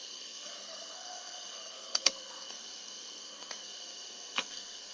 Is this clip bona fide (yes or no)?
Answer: no